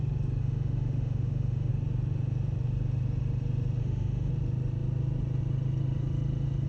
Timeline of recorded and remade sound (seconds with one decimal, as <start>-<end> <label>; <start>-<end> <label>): 0.0-0.4 recorded; 0.4-1.7 remade; 1.7-3.8 recorded; 3.8-4.3 remade; 4.3-6.7 recorded